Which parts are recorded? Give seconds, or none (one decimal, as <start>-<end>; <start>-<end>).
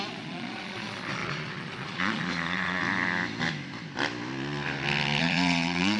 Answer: 2.8-5.2